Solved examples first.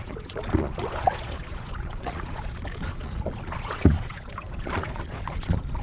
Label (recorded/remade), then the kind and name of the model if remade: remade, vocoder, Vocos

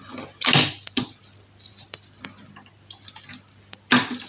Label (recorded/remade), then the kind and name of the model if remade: recorded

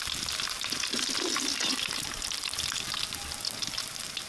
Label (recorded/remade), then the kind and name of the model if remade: recorded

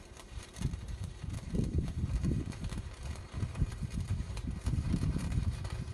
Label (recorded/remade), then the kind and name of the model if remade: remade, vocoder, BigVGAN v2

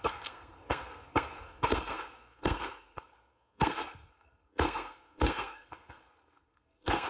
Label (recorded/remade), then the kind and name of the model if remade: remade, codec, SNAC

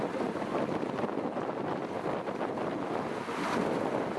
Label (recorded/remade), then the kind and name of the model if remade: recorded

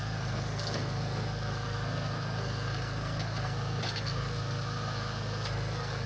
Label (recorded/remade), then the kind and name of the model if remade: remade, codec, SNAC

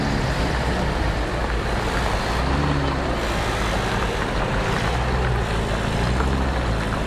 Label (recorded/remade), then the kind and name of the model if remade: recorded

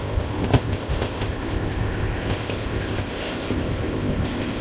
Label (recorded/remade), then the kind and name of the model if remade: remade, codec, ZipCodec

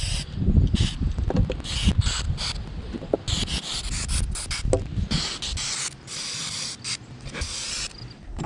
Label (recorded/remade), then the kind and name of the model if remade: recorded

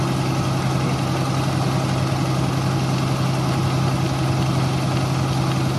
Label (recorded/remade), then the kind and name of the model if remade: recorded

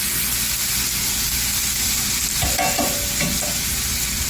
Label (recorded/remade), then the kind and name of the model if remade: recorded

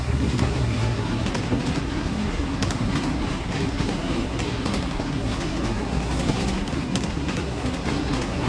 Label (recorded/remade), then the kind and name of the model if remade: remade, codec, SNAC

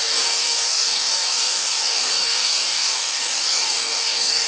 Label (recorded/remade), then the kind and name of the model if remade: remade, codec, DAC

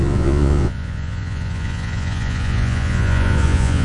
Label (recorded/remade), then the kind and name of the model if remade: remade, vocoder, Vocos